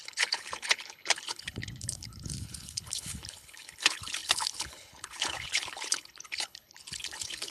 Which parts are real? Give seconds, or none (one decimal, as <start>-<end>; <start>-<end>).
none